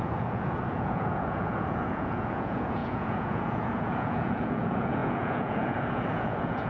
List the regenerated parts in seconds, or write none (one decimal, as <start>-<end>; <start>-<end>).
0.0-6.7